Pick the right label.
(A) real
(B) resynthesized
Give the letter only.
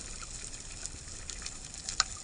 A